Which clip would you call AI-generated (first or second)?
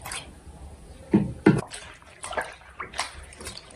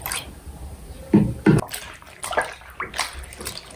first